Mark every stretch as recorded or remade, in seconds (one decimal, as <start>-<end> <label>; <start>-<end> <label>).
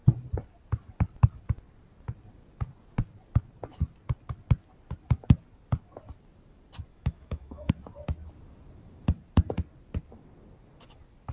0.0-6.9 recorded; 6.9-7.7 remade; 7.7-11.3 recorded